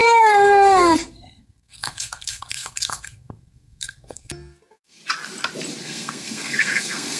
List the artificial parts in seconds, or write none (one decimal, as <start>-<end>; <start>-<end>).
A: 0.0-5.0; 5.8-7.2